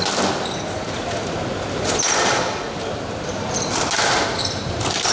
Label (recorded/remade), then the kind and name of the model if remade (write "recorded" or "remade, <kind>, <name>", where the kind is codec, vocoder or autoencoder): recorded